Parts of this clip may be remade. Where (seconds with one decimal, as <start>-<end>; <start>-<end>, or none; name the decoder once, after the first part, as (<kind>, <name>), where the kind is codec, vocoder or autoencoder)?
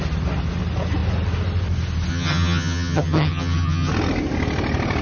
2.1-3.9 (vocoder, HiFi-GAN)